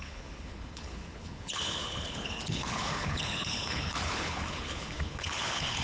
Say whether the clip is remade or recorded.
remade